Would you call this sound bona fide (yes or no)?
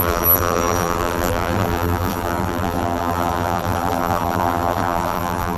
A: no